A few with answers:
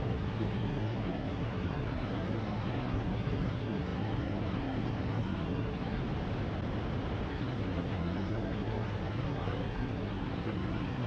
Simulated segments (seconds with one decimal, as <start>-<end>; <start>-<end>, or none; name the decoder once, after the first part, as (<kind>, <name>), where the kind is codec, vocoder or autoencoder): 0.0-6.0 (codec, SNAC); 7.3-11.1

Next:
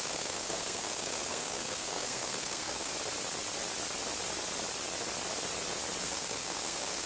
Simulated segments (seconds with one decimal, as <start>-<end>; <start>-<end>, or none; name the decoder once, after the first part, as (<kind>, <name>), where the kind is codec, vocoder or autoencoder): 0.0-2.9 (codec, SNAC); 6.0-7.1

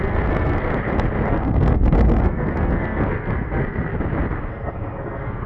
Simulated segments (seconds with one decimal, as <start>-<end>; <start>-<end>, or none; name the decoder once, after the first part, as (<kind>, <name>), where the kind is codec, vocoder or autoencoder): 0.0-0.7 (codec, SNAC); 1.3-3.9; 4.5-5.5